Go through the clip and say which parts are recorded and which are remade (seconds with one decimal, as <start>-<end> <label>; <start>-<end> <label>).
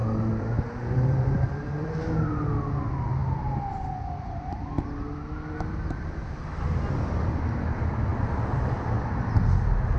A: 0.0-2.1 remade; 2.1-10.0 recorded